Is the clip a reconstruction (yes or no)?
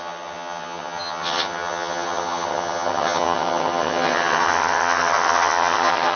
yes